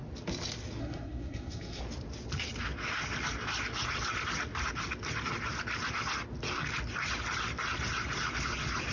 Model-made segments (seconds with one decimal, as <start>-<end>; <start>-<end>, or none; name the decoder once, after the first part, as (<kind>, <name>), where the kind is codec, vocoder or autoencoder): 0.8-1.8 (codec, SNAC)